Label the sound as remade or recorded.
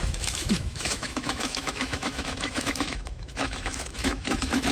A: remade